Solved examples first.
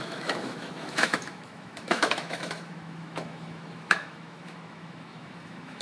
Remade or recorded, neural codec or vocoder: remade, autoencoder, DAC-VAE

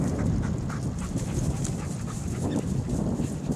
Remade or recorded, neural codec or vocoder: recorded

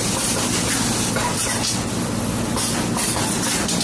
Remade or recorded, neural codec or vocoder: recorded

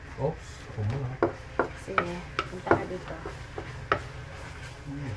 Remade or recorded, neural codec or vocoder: recorded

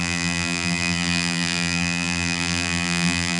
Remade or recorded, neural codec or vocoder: remade, vocoder, BigVGAN v2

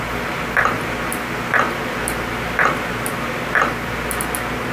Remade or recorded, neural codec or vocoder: recorded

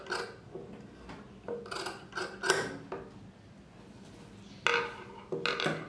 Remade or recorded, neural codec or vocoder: recorded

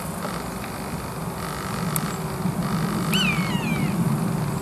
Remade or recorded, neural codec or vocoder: recorded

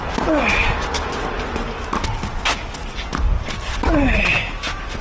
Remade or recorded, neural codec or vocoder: recorded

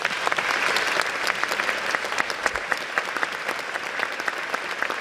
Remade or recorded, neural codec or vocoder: recorded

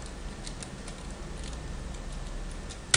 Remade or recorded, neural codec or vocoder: recorded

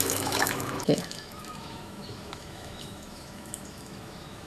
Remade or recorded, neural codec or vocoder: remade, autoencoder, DAC-VAE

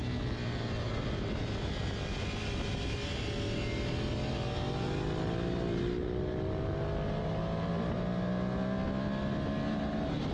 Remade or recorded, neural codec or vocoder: recorded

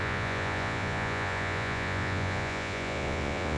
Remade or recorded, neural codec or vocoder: remade, vocoder, Vocos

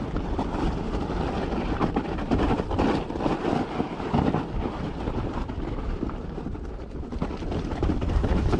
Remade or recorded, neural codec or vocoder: remade, vocoder, BigVGAN v2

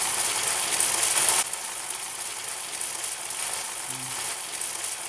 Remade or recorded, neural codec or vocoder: recorded